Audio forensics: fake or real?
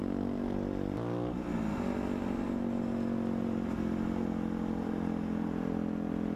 real